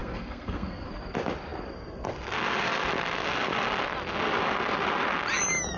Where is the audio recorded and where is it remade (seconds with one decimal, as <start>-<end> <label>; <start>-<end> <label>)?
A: 0.0-0.9 remade; 0.9-5.8 recorded